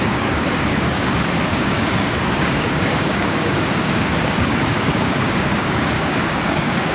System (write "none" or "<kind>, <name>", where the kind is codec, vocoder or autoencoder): codec, DAC